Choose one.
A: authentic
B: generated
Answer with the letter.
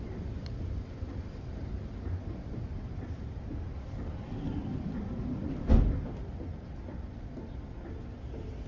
A